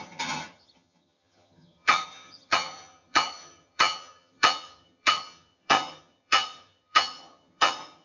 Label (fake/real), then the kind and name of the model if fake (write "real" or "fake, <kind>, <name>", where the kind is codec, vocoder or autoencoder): fake, vocoder, HiFi-GAN